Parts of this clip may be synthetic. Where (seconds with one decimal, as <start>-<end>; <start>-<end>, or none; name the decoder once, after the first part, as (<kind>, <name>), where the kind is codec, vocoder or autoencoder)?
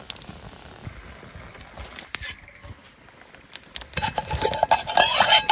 none